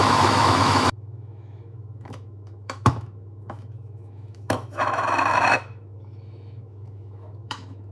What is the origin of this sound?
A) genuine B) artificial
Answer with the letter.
B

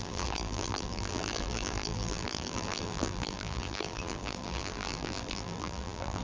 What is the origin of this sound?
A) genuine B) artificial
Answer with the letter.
B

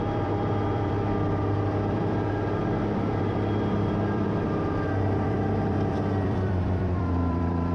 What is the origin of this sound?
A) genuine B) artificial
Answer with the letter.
B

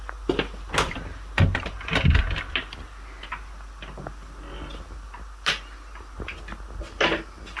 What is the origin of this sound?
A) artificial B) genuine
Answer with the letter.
B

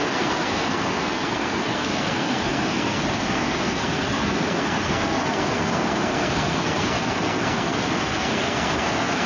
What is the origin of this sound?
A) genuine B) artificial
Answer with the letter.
B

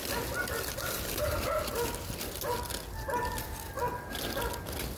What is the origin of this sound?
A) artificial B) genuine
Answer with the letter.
B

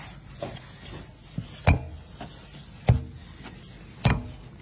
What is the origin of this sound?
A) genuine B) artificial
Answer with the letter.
A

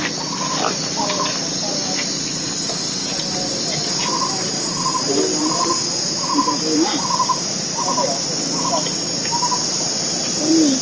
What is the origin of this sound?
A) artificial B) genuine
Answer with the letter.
B